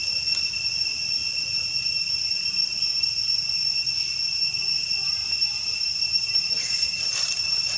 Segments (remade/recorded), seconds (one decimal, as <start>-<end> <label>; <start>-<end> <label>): 0.0-5.2 recorded; 5.2-7.8 remade